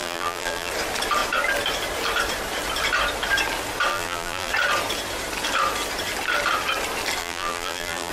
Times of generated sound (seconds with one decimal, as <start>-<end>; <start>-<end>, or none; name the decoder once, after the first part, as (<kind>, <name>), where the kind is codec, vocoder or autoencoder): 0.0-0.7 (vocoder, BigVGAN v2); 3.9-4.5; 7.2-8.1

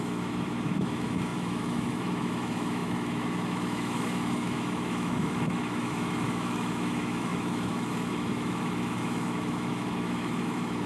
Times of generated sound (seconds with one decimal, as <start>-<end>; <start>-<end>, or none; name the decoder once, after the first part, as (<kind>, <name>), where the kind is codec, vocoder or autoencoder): 0.0-10.9 (autoencoder, DAC-VAE)

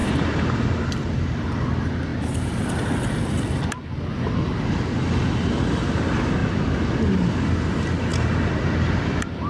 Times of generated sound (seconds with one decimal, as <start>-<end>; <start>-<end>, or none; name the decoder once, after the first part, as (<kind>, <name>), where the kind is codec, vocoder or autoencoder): 0.0-0.7 (vocoder, BigVGAN v2)

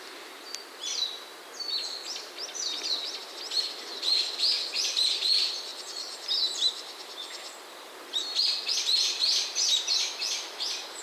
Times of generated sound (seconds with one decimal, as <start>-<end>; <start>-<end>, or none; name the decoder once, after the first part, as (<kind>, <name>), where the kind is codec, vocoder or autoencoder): none

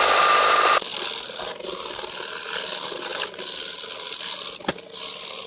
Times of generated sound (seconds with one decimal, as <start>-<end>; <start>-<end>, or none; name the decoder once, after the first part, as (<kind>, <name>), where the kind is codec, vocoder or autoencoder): none

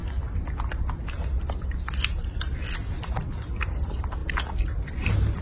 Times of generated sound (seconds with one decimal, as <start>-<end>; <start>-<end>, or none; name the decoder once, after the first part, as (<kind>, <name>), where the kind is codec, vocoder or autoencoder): 3.1-5.4 (vocoder, BigVGAN v2)